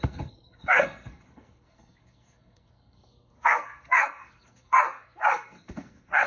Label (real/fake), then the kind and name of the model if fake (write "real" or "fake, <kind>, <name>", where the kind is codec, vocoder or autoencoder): fake, codec, SNAC